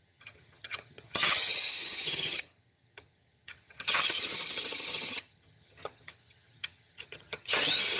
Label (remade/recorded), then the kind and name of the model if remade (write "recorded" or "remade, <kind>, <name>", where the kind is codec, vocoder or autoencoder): remade, vocoder, HiFi-GAN